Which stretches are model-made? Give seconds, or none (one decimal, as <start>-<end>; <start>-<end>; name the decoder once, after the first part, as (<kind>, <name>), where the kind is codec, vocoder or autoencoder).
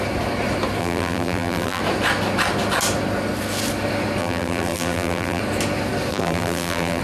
0.8-1.8 (vocoder, BigVGAN v2); 4.2-5.4; 6.1-7.0